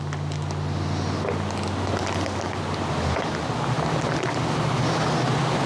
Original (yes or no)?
yes